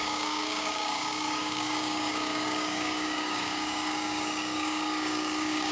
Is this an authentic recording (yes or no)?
no